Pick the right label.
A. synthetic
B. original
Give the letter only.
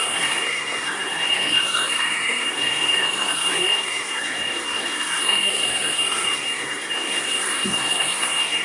A